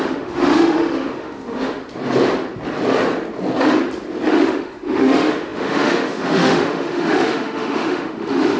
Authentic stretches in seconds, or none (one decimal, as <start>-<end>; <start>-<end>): 1.8-4.3